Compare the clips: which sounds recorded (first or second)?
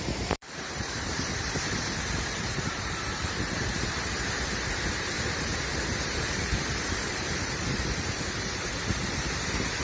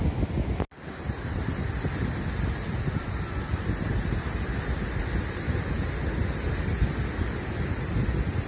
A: second